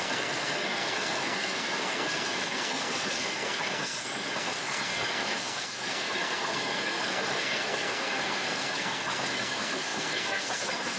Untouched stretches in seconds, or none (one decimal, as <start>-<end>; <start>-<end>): none